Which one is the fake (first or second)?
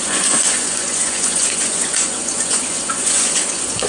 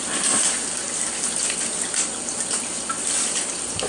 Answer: first